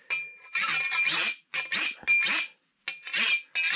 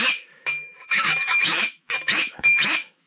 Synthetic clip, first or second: second